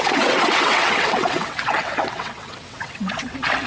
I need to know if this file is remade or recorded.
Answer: remade